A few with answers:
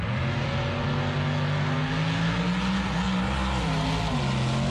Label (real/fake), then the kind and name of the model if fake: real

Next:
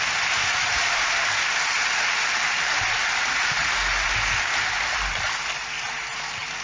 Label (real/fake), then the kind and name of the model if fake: real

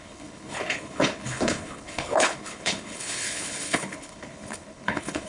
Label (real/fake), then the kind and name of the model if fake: fake, codec, HILCodec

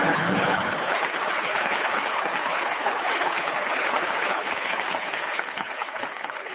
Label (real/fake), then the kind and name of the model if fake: fake, codec, HILCodec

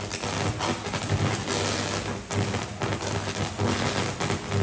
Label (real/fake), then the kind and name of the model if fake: real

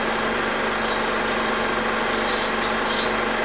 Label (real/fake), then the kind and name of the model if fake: real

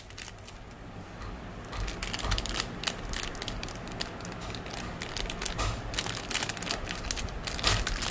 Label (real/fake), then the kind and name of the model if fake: real